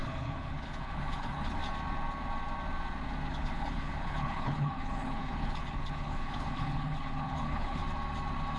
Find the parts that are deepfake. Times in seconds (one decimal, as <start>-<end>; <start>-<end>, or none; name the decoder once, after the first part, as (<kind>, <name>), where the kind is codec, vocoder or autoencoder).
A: 0.0-1.6 (codec, HILCodec); 3.3-7.8